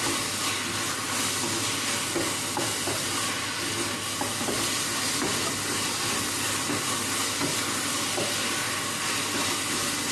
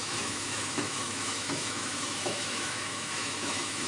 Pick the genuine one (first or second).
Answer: first